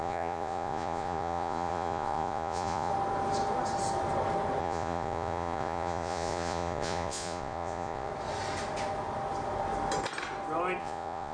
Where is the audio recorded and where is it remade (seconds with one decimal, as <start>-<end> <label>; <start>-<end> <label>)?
0.0-2.9 remade; 2.9-4.6 recorded; 4.6-8.1 remade; 8.1-10.8 recorded; 10.8-11.3 remade